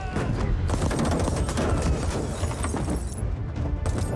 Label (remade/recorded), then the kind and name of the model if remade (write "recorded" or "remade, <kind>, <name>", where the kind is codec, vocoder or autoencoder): recorded